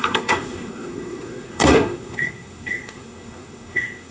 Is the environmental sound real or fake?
fake